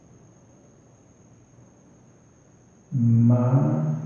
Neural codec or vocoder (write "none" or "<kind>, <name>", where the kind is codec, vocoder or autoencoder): none